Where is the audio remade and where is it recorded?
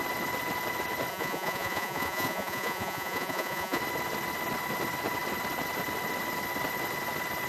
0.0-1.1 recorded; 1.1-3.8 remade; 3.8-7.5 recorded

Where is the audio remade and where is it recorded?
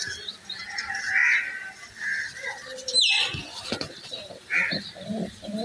0.0-5.6 recorded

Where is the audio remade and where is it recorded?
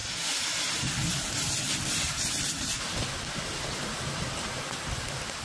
0.0-5.4 recorded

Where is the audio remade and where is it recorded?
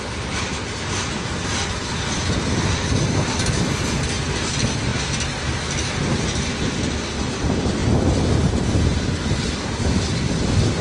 0.0-10.8 recorded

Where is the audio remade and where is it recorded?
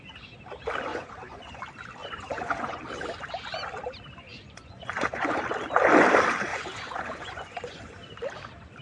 0.0-0.9 recorded; 0.9-1.6 remade; 1.6-2.0 recorded; 2.0-2.8 remade; 2.8-4.3 recorded; 4.3-5.4 remade; 5.4-6.5 recorded; 6.5-7.8 remade; 7.8-8.8 recorded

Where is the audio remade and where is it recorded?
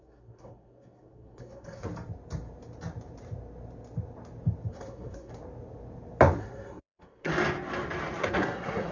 0.0-1.9 remade; 1.9-4.7 recorded; 4.7-5.3 remade; 5.3-6.4 recorded; 6.4-7.3 remade; 7.3-8.2 recorded; 8.2-8.9 remade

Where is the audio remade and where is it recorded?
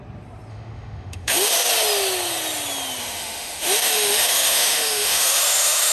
0.0-0.5 recorded; 0.5-1.7 remade; 1.7-3.0 recorded; 3.0-5.9 remade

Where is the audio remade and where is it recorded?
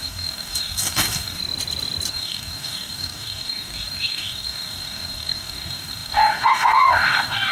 0.0-1.4 remade; 1.4-2.1 recorded; 2.1-7.5 remade